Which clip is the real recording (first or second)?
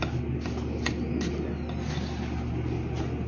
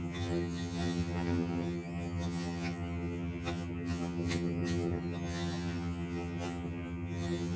first